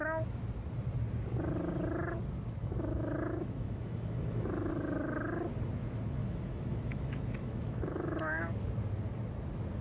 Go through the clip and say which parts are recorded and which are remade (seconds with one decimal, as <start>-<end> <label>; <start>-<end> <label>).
0.0-2.6 recorded; 2.6-4.7 remade; 4.7-6.2 recorded; 6.2-8.4 remade; 8.4-9.8 recorded